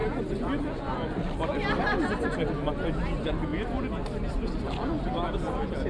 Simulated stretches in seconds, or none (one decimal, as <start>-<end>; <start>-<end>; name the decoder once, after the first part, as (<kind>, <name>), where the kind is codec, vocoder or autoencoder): none